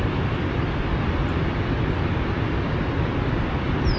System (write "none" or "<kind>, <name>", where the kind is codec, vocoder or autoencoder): none